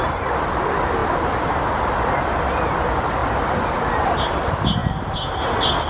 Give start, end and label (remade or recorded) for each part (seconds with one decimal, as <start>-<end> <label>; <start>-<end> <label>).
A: 0.0-4.8 remade; 4.8-5.9 recorded